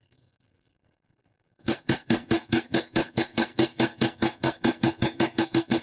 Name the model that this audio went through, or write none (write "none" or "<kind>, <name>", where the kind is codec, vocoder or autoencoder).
codec, SNAC